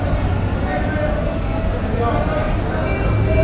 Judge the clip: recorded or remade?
recorded